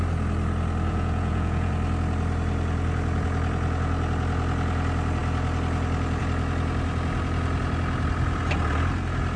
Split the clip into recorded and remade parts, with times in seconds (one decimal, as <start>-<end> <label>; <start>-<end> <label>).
0.0-0.9 recorded; 0.9-1.7 remade; 1.7-9.4 recorded